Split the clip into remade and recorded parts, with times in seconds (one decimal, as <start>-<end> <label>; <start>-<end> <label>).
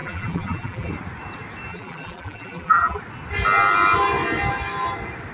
0.0-0.9 remade; 0.9-1.7 recorded; 1.7-3.0 remade; 3.0-5.3 recorded